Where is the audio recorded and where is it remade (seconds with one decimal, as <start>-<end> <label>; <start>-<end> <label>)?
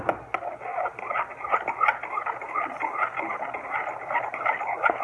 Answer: 0.0-5.0 recorded